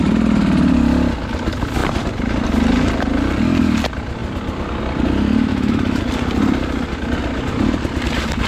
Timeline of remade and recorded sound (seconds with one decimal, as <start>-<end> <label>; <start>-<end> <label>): 0.0-5.5 recorded; 5.5-6.0 remade; 6.0-8.5 recorded